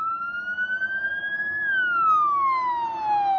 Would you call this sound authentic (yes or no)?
yes